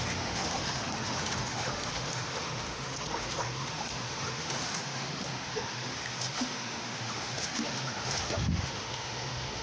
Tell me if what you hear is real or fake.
fake